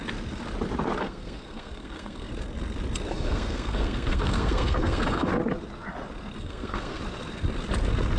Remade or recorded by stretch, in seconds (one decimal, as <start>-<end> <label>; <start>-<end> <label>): 0.0-1.0 recorded; 1.0-2.3 remade; 2.3-3.1 recorded; 3.1-5.3 remade; 5.3-6.4 recorded; 6.4-7.0 remade; 7.0-8.2 recorded